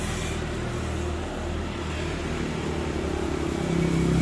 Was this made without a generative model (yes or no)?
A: yes